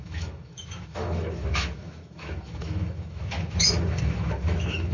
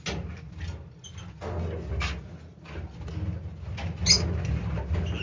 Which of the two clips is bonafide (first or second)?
second